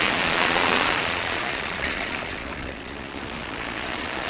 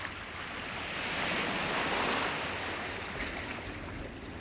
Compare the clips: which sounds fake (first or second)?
first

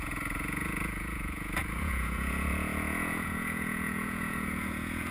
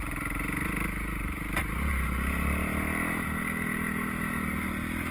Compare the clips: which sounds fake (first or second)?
first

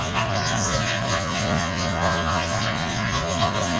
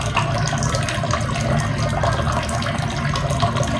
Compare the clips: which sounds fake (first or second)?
first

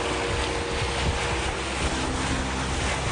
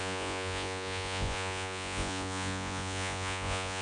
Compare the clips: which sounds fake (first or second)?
second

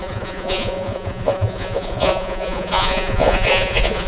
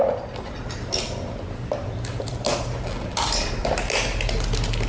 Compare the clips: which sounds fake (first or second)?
first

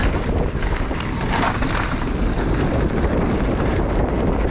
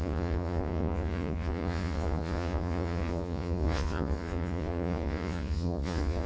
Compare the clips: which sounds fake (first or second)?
second